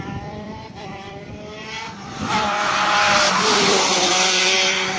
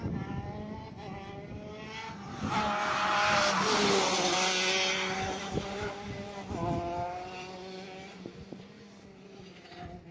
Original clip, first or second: second